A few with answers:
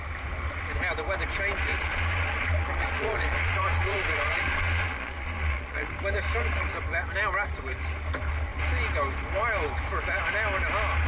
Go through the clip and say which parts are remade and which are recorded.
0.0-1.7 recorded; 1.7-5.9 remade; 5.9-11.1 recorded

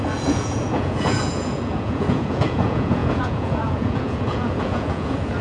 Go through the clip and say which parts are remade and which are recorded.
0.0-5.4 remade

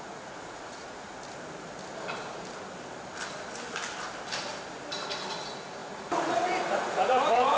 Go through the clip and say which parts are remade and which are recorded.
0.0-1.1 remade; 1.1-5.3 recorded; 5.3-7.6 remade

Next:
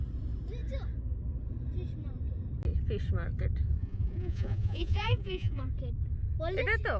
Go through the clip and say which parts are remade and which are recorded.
0.0-3.8 recorded; 3.8-5.6 remade; 5.6-7.0 recorded

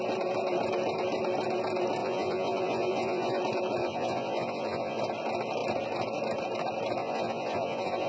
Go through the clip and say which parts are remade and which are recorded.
0.0-2.0 recorded; 2.0-3.4 remade; 3.4-3.8 recorded; 3.8-5.0 remade; 5.0-7.0 recorded; 7.0-8.1 remade